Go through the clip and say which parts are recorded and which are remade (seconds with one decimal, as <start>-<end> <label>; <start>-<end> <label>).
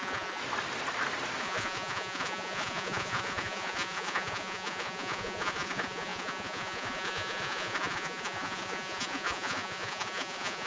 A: 0.0-0.4 remade; 0.4-1.4 recorded; 1.4-10.7 remade